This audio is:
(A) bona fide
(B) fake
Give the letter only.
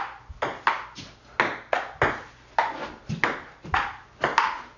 A